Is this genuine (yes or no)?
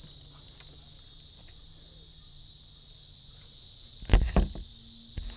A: yes